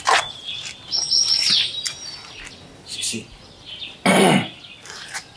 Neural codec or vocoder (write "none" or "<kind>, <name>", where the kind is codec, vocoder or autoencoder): none